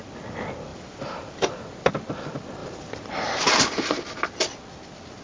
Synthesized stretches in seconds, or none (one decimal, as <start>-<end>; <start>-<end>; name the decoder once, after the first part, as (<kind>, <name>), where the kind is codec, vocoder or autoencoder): 0.7-1.9 (vocoder, BigVGAN v2)